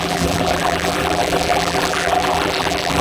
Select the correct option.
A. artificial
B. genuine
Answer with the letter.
A